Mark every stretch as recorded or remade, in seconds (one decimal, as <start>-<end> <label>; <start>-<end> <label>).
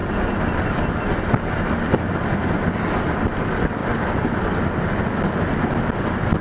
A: 0.0-6.4 recorded